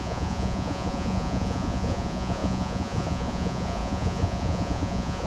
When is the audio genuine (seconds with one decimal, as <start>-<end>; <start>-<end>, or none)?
none